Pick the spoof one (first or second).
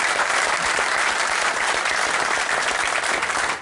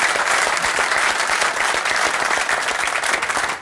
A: first